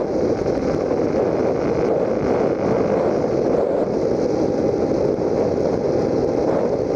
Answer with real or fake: real